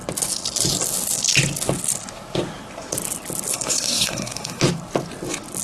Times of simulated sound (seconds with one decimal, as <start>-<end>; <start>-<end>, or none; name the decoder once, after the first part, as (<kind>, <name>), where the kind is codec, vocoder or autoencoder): 3.5-4.6 (codec, SNAC)